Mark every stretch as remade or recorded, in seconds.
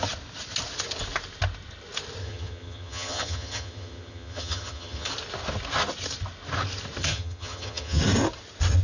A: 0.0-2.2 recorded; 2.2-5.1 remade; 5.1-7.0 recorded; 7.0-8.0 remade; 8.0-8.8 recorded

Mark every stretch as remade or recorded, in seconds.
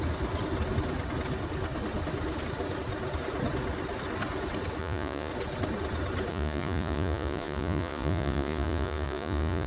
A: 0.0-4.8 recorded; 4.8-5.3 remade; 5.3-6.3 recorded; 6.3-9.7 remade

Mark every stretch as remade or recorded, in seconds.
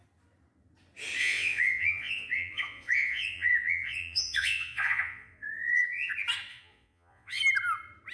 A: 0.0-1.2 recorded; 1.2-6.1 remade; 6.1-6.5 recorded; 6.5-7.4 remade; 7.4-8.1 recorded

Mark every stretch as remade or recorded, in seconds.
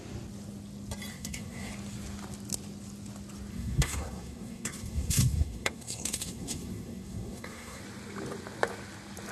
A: 0.0-1.1 recorded; 1.1-1.7 remade; 1.7-3.5 recorded; 3.5-7.8 remade; 7.8-9.3 recorded